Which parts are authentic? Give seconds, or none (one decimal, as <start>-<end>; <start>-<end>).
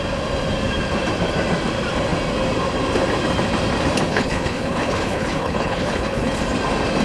0.0-4.1; 6.4-7.0